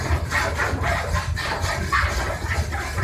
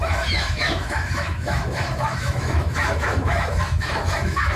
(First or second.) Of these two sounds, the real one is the first